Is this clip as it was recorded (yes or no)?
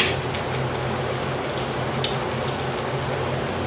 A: yes